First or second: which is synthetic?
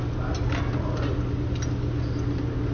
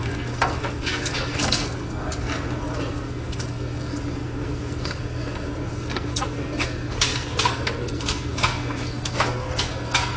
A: second